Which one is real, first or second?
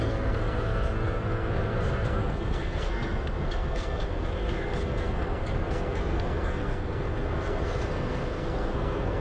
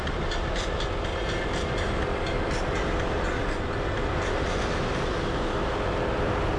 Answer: second